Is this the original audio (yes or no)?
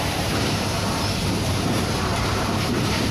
no